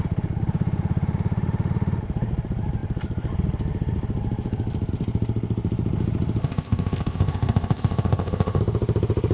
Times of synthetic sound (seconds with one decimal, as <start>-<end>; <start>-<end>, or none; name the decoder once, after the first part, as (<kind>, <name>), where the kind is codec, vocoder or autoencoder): 6.4-8.6 (codec, ZipCodec)